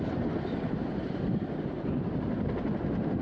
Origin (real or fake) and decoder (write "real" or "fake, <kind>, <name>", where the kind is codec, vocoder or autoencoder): real